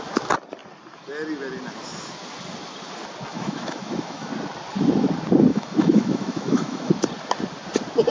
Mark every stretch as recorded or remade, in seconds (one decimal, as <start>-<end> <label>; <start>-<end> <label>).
0.0-3.3 recorded; 3.3-4.3 remade; 4.3-5.5 recorded; 5.5-6.9 remade; 6.9-8.1 recorded